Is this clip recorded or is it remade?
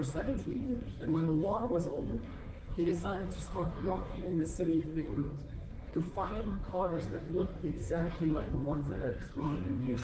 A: remade